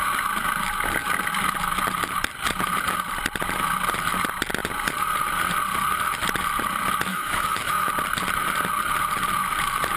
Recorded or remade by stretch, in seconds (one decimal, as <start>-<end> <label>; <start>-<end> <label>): 0.0-7.1 recorded; 7.1-7.9 remade; 7.9-10.0 recorded